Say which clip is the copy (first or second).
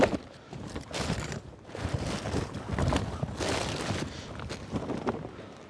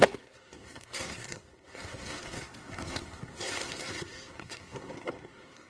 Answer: second